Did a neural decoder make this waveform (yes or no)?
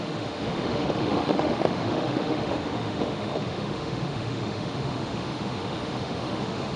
yes